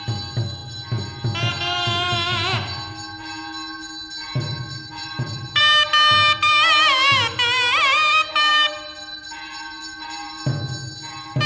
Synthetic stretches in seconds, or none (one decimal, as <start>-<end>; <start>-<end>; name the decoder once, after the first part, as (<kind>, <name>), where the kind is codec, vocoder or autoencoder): 4.2-5.6 (vocoder, BigVGAN v2); 8.5-10.4